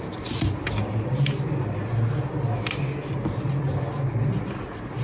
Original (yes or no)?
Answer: yes